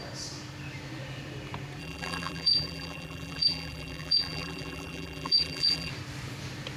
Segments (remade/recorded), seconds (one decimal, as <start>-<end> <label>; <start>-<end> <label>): 0.0-1.8 recorded; 1.8-5.9 remade; 5.9-6.8 recorded